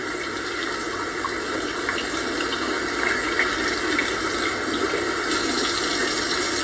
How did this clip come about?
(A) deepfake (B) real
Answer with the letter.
B